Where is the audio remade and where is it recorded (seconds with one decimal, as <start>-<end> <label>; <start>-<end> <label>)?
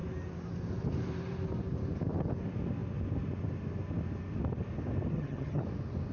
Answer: 0.0-5.1 recorded; 5.1-5.6 remade; 5.6-6.1 recorded